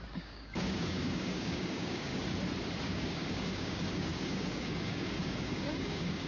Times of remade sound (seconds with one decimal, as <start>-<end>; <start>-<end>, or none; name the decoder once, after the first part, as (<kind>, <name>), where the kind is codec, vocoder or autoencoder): 0.0-2.1 (codec, DAC); 2.8-6.3